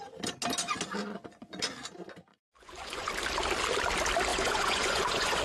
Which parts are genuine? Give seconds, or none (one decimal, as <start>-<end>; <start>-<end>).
0.0-1.0; 1.6-2.3; 3.1-4.3